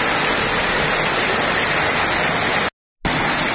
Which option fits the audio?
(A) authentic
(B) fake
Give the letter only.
A